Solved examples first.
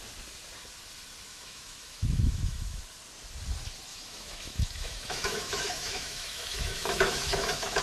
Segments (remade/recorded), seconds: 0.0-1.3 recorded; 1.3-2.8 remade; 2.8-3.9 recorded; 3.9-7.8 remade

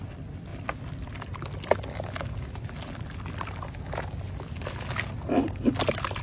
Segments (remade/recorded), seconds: 0.0-6.2 recorded

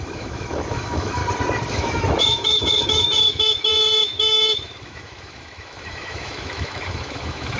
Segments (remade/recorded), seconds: 0.0-1.2 remade; 1.2-1.7 recorded; 1.7-7.6 remade

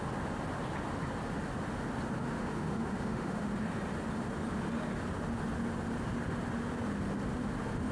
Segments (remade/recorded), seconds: 0.0-2.2 recorded; 2.2-3.5 remade; 3.5-7.9 recorded